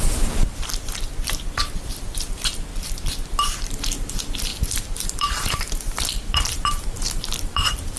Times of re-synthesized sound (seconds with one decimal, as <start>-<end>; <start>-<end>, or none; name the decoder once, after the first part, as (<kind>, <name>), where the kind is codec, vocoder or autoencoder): 0.0-1.1 (vocoder, BigVGAN v2); 2.3-2.7; 3.7-8.0